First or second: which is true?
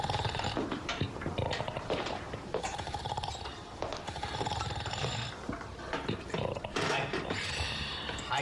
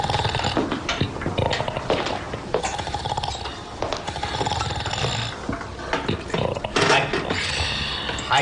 second